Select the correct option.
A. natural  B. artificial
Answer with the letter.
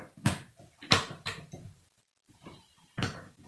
B